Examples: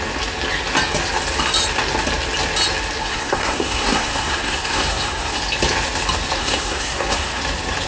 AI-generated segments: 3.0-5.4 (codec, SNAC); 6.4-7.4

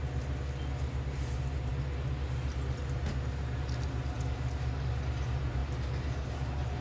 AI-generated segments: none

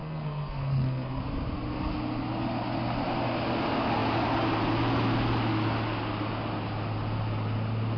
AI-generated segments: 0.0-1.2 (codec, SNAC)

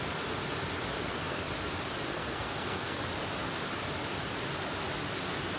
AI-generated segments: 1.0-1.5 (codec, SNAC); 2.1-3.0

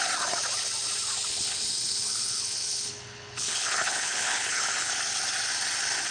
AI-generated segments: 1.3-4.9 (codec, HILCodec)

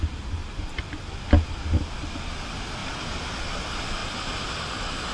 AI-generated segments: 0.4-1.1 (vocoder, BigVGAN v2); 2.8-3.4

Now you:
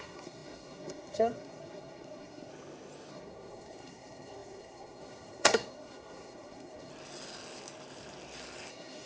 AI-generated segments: 0.0-2.5 (codec, SNAC); 3.1-6.9; 8.7-9.1